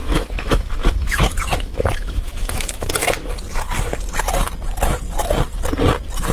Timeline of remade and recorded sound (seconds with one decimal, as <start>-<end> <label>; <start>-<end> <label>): 0.0-2.9 remade; 2.9-6.3 recorded